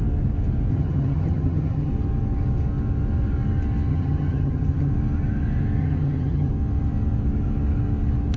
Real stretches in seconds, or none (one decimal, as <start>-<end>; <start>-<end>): 0.0-0.7; 1.9-3.9; 4.9-5.8; 6.5-8.4